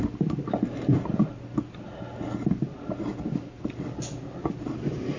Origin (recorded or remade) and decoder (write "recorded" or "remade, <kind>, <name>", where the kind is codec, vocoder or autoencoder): recorded